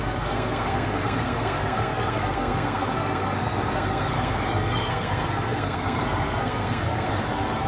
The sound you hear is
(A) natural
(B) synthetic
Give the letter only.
B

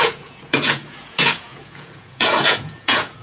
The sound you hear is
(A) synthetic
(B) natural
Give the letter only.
A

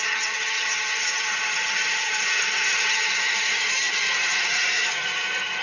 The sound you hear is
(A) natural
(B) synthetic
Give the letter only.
B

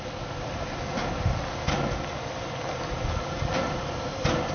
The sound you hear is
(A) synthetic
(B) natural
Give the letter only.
B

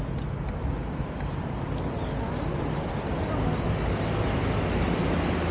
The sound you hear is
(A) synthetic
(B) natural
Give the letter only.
B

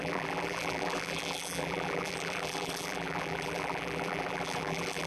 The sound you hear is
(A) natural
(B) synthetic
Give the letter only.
B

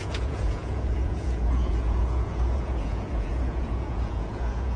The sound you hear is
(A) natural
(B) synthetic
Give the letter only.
B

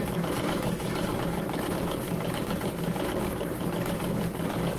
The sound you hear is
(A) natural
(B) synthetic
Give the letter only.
B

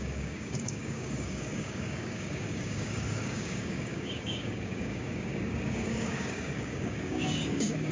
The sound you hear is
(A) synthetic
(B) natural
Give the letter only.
A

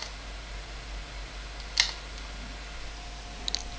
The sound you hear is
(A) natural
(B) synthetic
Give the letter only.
A